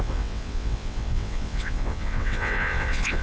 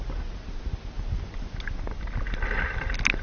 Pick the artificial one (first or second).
first